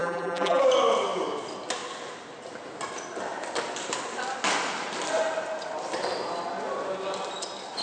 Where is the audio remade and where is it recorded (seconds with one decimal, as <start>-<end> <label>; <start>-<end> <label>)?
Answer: 0.0-0.6 remade; 0.6-7.8 recorded